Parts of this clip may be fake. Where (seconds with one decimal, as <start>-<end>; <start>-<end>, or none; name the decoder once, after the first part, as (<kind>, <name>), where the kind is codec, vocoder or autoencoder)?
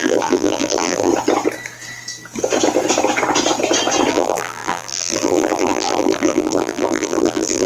0.0-1.1 (vocoder, BigVGAN v2); 4.1-7.7